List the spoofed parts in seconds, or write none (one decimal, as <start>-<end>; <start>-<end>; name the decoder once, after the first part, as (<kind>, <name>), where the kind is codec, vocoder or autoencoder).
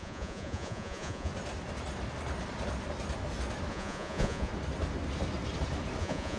0.0-1.3 (vocoder, Vocos); 3.7-4.5; 6.0-6.4